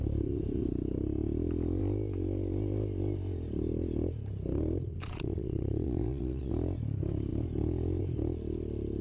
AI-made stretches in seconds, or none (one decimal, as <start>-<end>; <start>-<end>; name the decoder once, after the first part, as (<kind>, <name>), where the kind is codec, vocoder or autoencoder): 4.9-6.5 (vocoder, Vocos)